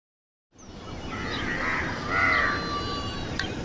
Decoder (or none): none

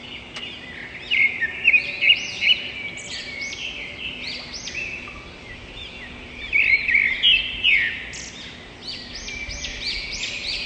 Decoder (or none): none